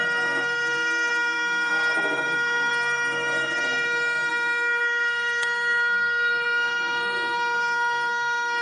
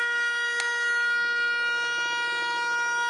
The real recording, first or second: second